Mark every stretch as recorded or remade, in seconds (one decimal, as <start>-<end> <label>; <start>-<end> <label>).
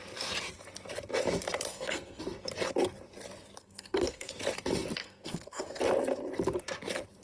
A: 0.0-1.7 recorded; 1.7-2.2 remade; 2.2-3.6 recorded; 3.6-4.3 remade; 4.3-5.0 recorded; 5.0-5.8 remade; 5.8-7.2 recorded